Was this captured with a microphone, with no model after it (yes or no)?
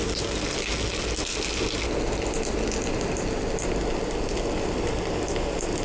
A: yes